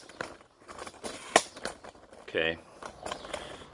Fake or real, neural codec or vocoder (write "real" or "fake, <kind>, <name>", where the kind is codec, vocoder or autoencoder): real